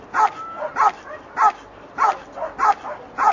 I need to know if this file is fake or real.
real